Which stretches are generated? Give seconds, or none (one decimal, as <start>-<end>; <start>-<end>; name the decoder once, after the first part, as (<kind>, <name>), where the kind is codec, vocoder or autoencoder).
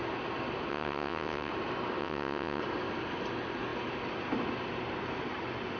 0.7-1.5 (vocoder, WaveNeXt); 2.0-2.6